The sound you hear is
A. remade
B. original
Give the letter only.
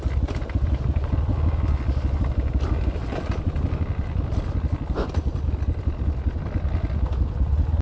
B